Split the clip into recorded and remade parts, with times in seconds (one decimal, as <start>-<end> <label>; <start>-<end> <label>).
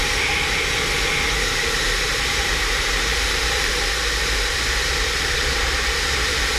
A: 0.0-2.1 recorded; 2.1-6.6 remade